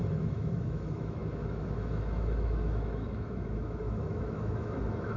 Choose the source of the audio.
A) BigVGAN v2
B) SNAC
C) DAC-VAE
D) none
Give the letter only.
C